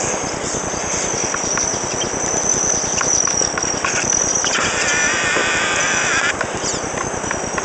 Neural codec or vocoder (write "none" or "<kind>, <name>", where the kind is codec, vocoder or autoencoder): none